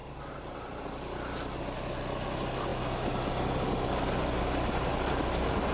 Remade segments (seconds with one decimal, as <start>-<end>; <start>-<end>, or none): 0.0-1.0

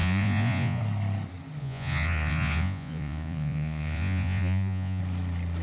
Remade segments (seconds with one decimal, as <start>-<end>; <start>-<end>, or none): 0.0-0.8; 1.6-5.0

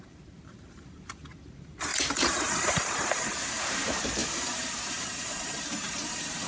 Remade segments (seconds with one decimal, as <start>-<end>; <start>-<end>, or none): 0.0-6.5

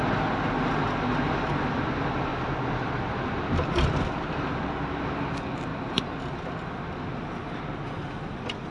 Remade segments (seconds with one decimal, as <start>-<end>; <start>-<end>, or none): 2.3-4.4

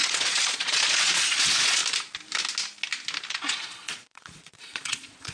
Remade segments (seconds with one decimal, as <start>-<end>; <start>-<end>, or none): 0.0-1.8; 3.3-5.3

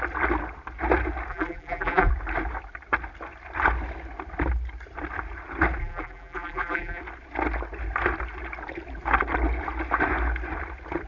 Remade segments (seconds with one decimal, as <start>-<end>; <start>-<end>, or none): 1.3-2.1; 5.8-7.0

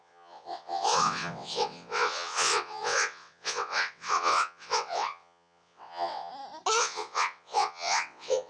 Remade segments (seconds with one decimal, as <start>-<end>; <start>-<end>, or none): 0.0-6.3; 6.8-8.5

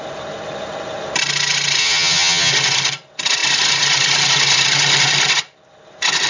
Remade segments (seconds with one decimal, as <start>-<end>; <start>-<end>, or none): 1.8-2.5